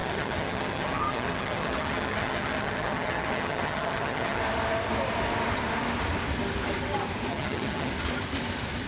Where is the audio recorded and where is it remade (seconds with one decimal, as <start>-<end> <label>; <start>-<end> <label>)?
0.0-4.4 remade; 4.4-7.3 recorded; 7.3-7.9 remade; 7.9-8.9 recorded